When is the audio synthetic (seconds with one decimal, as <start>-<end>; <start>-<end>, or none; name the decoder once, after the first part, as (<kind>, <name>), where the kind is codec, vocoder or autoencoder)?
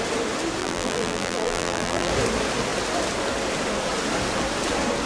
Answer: 0.6-2.1 (vocoder, BigVGAN v2)